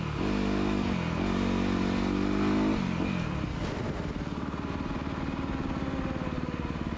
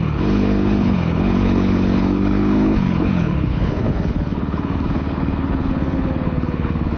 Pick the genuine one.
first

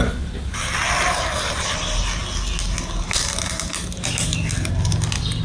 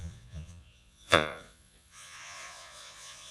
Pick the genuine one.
first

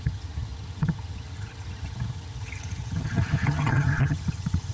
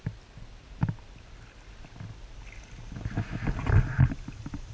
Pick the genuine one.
second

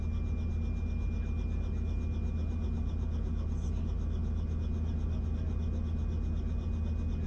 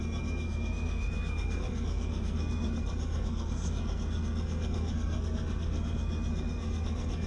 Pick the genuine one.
first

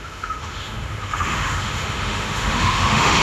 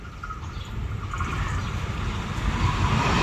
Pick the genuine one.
second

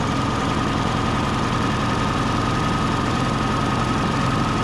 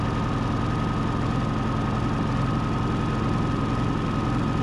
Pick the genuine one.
second